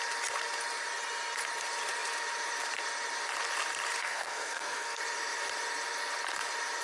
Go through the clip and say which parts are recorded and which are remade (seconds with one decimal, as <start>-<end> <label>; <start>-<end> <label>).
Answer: 0.0-4.0 recorded; 4.0-5.0 remade; 5.0-6.8 recorded